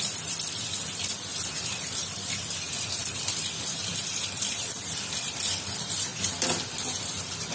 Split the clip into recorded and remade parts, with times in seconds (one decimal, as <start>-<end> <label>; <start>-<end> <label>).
0.0-6.1 remade; 6.1-7.0 recorded; 7.0-7.5 remade